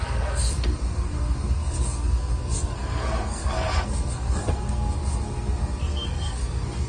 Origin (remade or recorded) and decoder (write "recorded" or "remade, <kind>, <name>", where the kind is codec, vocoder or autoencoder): remade, codec, SNAC